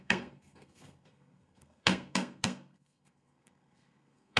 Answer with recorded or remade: remade